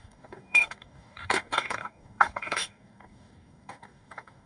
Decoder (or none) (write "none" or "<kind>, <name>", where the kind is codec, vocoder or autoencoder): codec, DAC